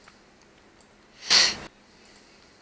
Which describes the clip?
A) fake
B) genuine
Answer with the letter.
B